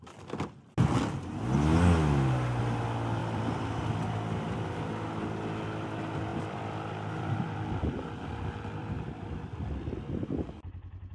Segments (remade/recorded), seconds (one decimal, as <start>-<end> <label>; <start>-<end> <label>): 0.0-3.2 recorded; 3.2-3.8 remade; 3.8-6.3 recorded; 6.3-8.3 remade; 8.3-8.8 recorded; 8.8-9.5 remade; 9.5-9.9 recorded; 9.9-11.1 remade